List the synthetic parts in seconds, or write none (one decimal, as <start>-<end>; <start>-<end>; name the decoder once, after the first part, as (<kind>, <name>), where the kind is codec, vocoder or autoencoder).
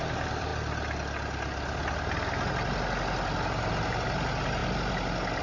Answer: 0.0-0.5 (vocoder, BigVGAN v2); 3.7-4.6